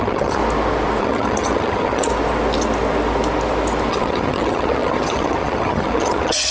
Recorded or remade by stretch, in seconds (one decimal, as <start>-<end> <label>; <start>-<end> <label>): 0.0-0.4 remade; 0.4-1.0 recorded; 1.0-2.1 remade; 2.1-3.9 recorded; 3.9-6.5 remade